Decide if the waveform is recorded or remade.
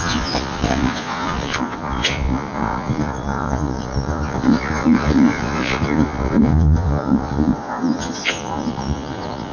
remade